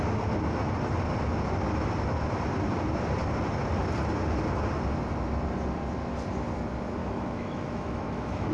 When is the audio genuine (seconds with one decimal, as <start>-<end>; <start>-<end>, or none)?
0.0-7.0